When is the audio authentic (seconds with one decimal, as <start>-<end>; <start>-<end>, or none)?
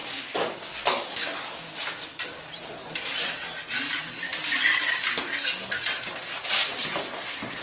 1.6-7.6